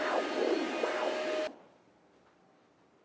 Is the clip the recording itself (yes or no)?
yes